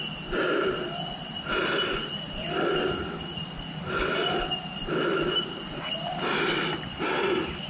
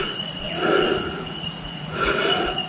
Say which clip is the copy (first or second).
second